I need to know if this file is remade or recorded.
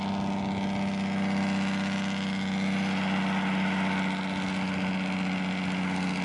recorded